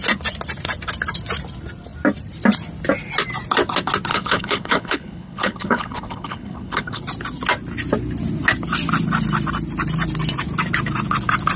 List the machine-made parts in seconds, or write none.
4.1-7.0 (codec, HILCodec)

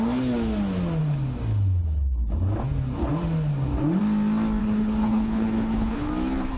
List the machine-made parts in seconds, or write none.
4.6-6.1 (codec, HILCodec)

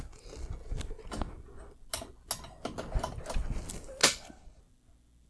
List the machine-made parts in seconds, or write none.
4.0-4.6 (codec, HILCodec)

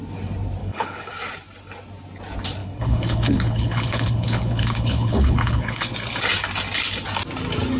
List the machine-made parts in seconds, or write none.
0.6-1.1 (codec, HILCodec); 2.6-5.9

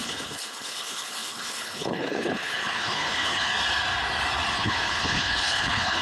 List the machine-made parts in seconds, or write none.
0.0-3.5 (codec, HILCodec); 4.5-6.0

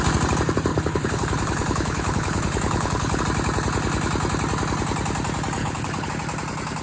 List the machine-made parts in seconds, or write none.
0.7-3.2 (codec, HILCodec); 5.6-6.1

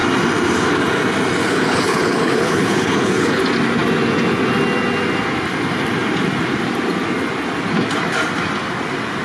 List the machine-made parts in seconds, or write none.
1.4-3.4 (codec, HILCodec)

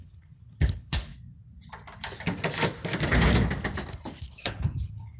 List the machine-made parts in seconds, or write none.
0.0-1.1 (codec, HILCodec); 4.2-5.2